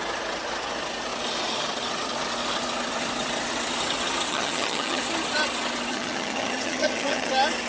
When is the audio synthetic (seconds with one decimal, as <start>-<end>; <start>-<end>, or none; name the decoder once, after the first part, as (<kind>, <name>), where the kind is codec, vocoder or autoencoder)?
4.3-5.0 (vocoder, HiFi-GAN); 5.9-7.3